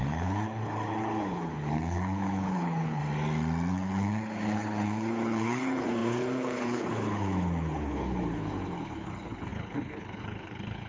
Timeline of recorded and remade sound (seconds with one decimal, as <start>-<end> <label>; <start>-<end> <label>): 0.0-3.0 remade; 3.0-3.7 recorded; 3.7-10.9 remade